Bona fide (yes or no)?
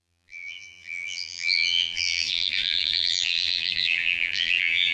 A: no